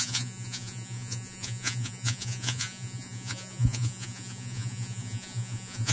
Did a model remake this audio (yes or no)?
yes